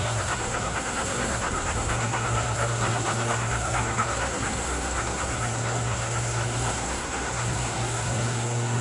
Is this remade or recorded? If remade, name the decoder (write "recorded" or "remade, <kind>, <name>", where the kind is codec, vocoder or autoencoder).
remade, codec, SNAC